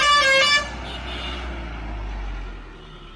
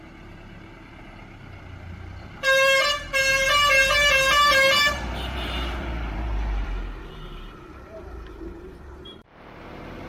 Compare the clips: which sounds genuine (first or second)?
first